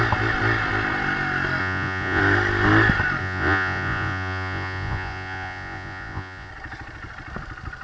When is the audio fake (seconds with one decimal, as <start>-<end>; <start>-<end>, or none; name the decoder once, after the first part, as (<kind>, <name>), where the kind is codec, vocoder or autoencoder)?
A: 1.6-2.2 (vocoder, Vocos); 3.2-6.5